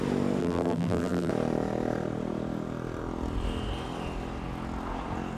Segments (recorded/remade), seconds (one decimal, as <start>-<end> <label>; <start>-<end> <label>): 0.0-0.4 recorded; 0.4-1.3 remade; 1.3-5.4 recorded